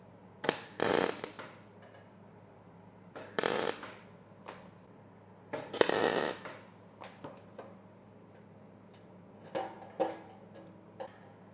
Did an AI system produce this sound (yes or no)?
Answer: no